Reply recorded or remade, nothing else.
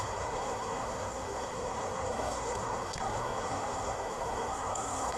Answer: remade